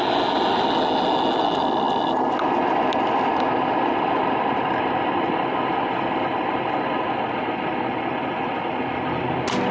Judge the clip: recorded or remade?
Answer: recorded